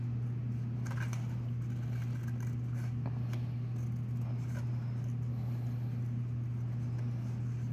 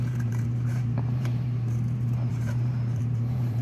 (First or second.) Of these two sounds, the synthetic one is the second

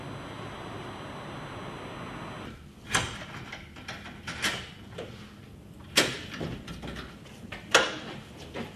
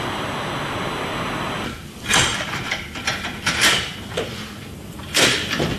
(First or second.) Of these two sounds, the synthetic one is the second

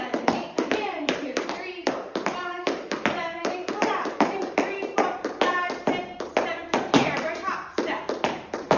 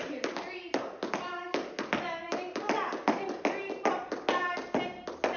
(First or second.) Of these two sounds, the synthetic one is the first